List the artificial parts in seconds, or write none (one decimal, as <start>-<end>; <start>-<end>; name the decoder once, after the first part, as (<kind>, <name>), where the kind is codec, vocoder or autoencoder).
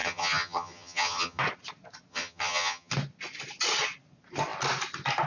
0.0-1.4 (vocoder, HiFi-GAN); 2.1-2.9